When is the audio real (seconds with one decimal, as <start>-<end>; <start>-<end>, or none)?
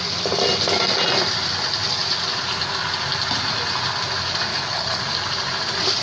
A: 0.0-4.5; 5.0-6.0